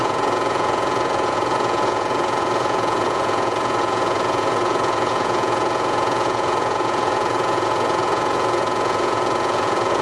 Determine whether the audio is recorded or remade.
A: remade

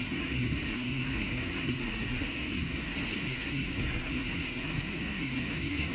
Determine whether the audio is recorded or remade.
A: remade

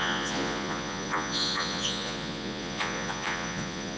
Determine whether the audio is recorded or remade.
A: remade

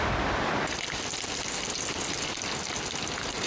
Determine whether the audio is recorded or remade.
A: recorded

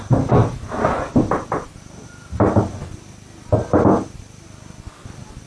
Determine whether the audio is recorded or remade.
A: recorded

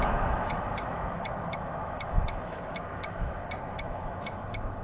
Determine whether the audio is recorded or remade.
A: remade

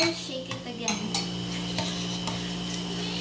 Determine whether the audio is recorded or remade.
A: recorded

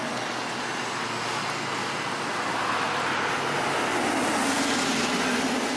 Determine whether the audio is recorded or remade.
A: recorded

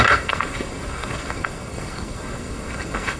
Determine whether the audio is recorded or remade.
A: remade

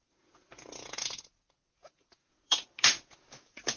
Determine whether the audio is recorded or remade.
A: remade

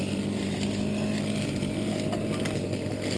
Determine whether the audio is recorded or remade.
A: recorded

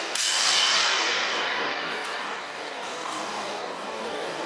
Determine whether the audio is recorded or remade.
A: remade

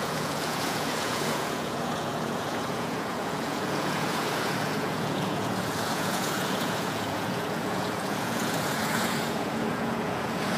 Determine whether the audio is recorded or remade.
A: remade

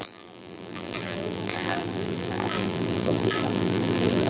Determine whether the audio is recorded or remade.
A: remade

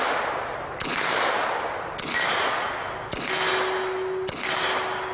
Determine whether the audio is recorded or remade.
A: recorded